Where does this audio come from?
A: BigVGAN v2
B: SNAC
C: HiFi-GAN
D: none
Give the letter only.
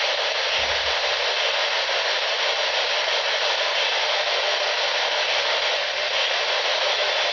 D